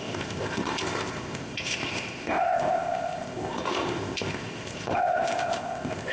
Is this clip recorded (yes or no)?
no